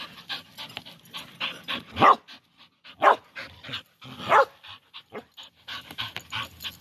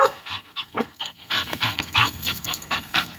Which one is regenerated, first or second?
second